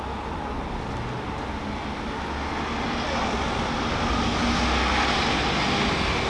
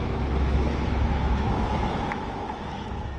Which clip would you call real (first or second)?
first